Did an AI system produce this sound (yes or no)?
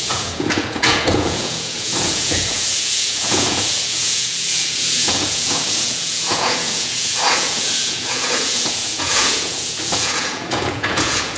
yes